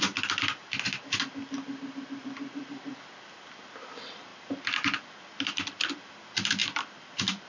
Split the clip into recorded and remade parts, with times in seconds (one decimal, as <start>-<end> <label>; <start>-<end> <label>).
0.0-2.2 recorded; 2.2-2.9 remade; 2.9-6.6 recorded; 6.6-7.5 remade